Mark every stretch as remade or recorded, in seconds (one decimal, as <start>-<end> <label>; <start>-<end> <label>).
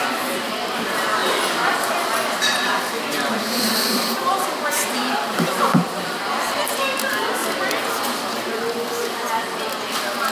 0.0-1.2 recorded; 1.2-6.3 remade; 6.3-10.3 recorded